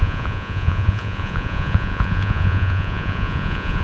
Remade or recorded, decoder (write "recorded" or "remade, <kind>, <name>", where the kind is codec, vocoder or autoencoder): remade, vocoder, Vocos